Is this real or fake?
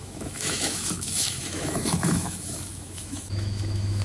fake